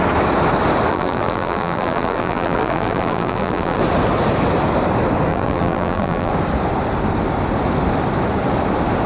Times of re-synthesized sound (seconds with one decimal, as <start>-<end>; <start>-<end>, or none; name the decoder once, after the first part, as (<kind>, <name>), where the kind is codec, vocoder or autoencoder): 0.9-3.8 (vocoder, BigVGAN v2); 5.3-6.3